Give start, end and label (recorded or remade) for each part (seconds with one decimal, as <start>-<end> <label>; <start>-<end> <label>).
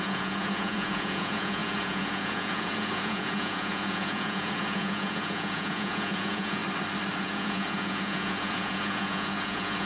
0.0-6.6 remade; 6.6-7.2 recorded; 7.2-9.9 remade